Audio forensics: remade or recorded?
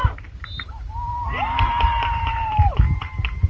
remade